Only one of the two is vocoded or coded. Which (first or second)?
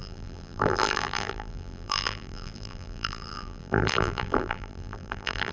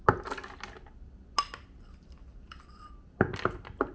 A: first